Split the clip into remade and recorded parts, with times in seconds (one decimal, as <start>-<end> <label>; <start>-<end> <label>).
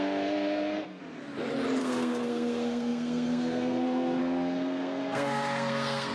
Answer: 0.0-1.0 remade; 1.0-1.8 recorded; 1.8-6.1 remade